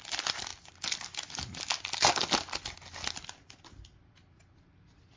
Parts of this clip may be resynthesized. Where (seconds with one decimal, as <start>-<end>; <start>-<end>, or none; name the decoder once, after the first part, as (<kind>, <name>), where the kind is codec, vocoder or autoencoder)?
none